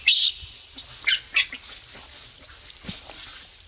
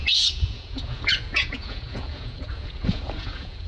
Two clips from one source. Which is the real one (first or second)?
first